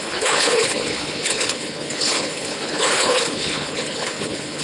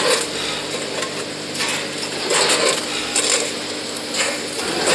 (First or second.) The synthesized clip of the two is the first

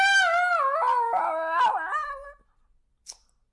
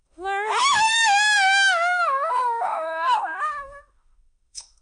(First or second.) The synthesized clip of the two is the second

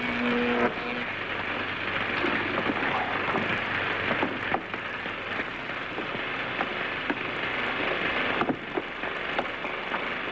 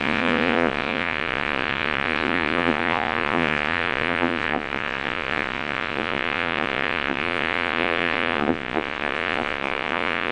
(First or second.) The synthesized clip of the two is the second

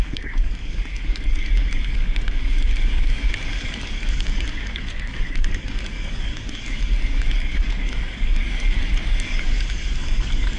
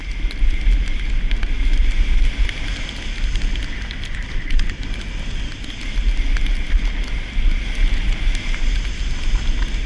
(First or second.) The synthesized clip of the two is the first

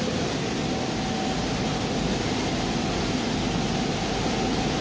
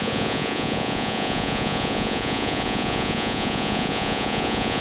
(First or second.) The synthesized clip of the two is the second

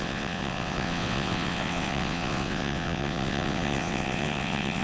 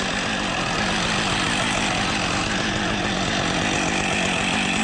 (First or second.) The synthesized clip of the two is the first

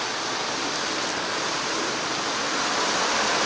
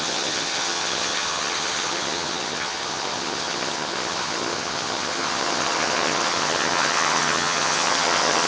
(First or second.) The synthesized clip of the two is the second